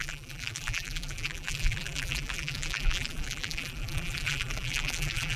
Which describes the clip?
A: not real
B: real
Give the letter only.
A